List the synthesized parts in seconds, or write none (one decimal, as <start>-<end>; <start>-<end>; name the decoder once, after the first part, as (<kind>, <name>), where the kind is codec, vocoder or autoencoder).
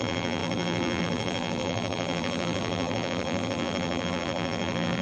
0.0-5.0 (vocoder, BigVGAN v2)